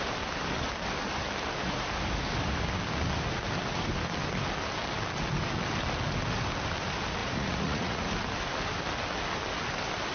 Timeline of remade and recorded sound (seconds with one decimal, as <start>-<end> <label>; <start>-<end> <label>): 0.0-7.2 recorded; 7.2-8.0 remade; 8.0-10.1 recorded